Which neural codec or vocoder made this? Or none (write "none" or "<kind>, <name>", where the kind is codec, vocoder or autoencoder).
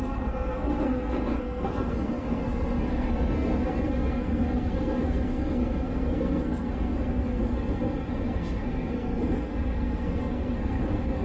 codec, SNAC